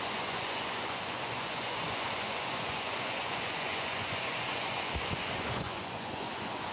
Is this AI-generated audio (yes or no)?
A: yes